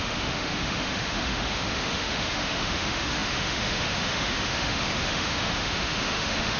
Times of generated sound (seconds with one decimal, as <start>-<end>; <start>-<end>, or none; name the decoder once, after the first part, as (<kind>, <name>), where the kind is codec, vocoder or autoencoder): 0.0-6.6 (autoencoder, DAC-VAE)